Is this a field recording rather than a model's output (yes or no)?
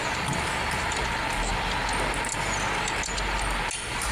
yes